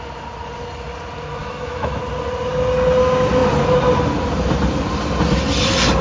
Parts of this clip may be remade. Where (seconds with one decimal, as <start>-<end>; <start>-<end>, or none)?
1.4-2.0